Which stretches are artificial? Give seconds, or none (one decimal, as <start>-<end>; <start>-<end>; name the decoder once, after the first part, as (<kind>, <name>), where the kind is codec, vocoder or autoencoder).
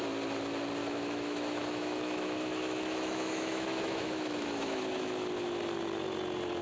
0.8-4.8 (autoencoder, DAC-VAE)